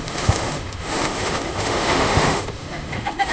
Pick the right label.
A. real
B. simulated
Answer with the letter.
B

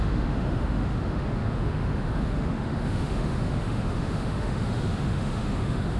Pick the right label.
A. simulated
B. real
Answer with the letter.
A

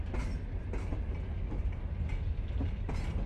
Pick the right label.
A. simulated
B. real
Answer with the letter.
B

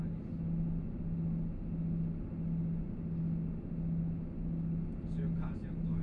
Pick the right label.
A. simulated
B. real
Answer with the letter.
B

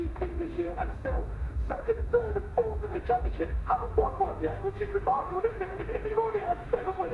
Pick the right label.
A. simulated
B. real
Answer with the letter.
A